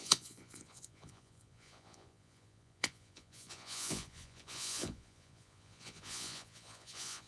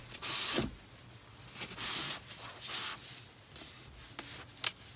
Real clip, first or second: second